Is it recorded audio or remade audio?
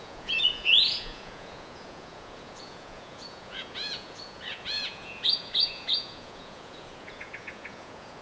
remade